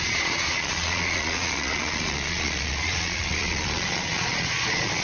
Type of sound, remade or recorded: remade